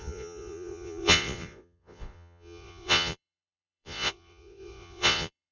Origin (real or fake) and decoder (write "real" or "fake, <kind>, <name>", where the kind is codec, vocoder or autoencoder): fake, vocoder, Vocos